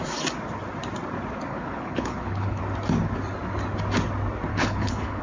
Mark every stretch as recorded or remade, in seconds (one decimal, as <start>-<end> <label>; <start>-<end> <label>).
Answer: 0.0-1.5 recorded; 1.5-2.6 remade; 2.6-4.5 recorded; 4.5-5.2 remade